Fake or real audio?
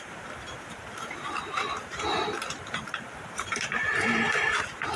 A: fake